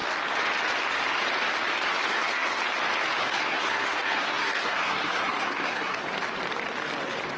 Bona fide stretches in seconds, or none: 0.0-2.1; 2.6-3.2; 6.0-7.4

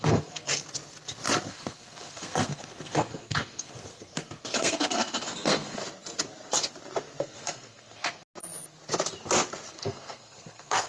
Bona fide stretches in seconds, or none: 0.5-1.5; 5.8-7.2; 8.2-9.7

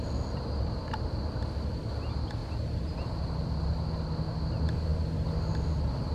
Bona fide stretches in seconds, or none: 0.0-6.1